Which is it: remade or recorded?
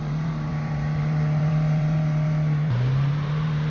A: remade